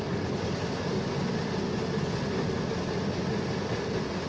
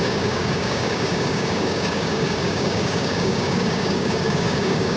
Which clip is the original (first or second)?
first